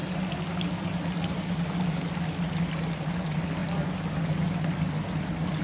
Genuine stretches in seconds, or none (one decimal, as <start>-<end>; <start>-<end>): 0.0-5.6